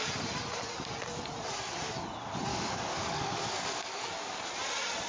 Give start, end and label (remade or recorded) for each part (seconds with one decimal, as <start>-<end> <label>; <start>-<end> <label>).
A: 0.0-2.5 recorded; 2.5-4.4 remade; 4.4-5.1 recorded